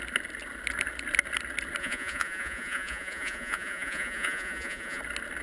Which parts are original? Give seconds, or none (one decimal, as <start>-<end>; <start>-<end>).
0.0-1.8; 5.0-5.4